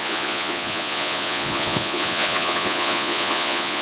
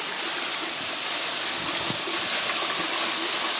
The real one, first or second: second